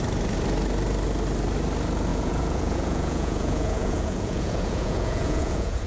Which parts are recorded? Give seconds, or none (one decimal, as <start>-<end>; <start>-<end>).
0.0-2.1